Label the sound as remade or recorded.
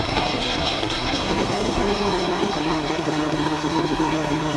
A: remade